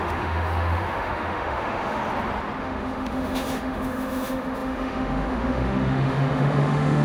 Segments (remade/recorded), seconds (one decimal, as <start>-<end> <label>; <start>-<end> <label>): 0.0-2.0 remade; 2.0-2.6 recorded; 2.6-7.0 remade